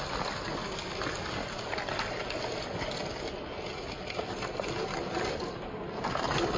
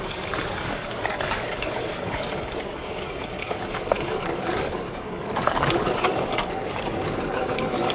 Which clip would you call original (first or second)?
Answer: first